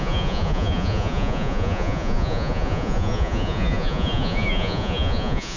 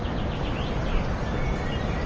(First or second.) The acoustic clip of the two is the second